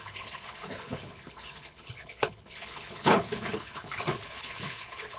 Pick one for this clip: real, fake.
fake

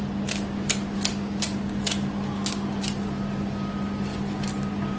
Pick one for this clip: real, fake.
fake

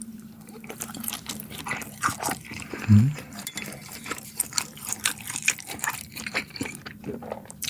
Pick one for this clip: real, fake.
fake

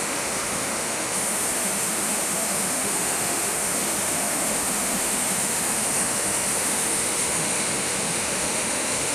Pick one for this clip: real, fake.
fake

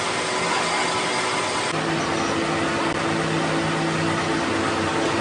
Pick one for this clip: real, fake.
real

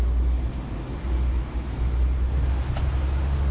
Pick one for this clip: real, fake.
real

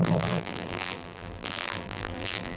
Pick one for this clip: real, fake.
fake